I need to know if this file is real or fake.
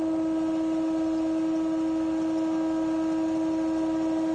real